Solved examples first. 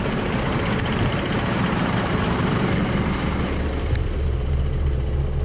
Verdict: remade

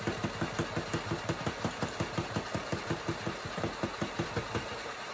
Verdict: recorded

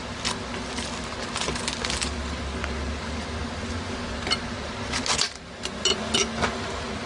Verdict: recorded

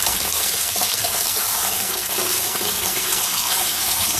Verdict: remade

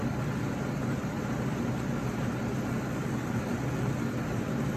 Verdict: recorded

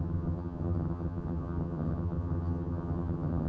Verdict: remade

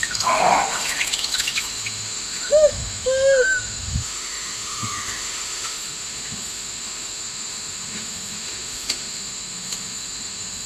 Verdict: remade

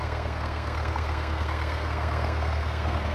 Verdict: remade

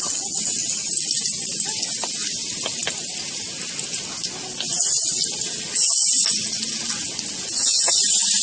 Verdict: recorded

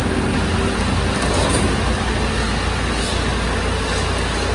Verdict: recorded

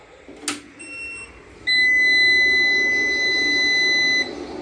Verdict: recorded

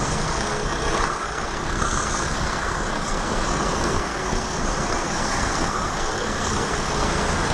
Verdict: remade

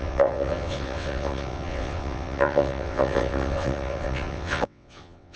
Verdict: remade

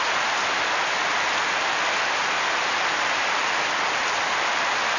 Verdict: recorded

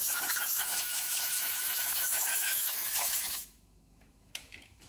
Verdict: remade